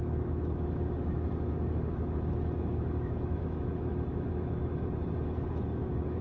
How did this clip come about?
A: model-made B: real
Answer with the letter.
A